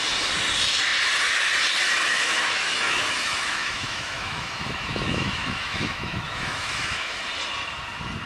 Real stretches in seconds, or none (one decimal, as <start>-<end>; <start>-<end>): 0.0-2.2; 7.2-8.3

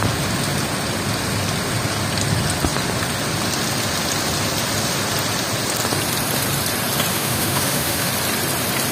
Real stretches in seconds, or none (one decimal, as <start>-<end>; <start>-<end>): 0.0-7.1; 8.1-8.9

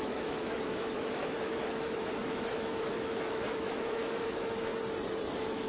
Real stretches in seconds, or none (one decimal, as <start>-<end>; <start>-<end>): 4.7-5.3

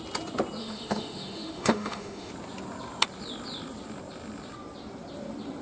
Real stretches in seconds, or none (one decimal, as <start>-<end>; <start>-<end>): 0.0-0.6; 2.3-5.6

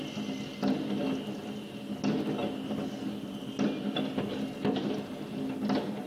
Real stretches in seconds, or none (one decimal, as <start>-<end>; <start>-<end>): 0.0-6.1